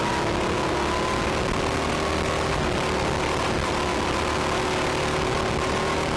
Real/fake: real